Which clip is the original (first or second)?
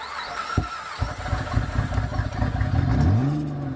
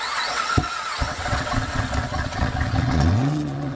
first